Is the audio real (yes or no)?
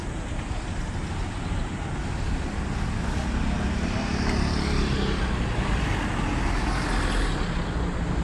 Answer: yes